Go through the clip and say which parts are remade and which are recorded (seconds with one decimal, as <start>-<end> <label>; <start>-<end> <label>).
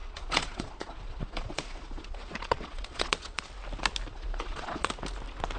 0.0-3.4 remade; 3.4-4.1 recorded; 4.1-4.9 remade; 4.9-5.6 recorded